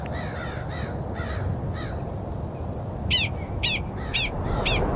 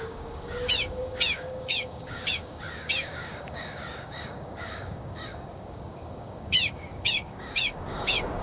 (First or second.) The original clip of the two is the first